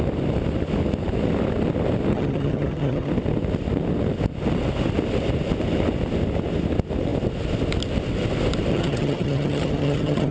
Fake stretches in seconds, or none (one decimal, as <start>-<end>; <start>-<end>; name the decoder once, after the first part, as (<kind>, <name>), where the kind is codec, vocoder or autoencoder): 2.1-3.1 (vocoder, HiFi-GAN); 8.7-10.3